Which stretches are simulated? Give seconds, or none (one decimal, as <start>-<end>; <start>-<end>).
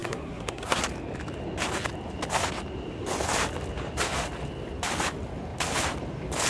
0.0-0.8